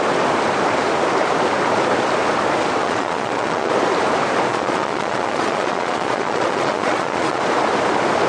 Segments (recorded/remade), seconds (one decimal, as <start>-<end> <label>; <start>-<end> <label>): 0.0-2.8 recorded; 2.8-3.7 remade; 3.7-4.5 recorded; 4.5-7.4 remade; 7.4-8.3 recorded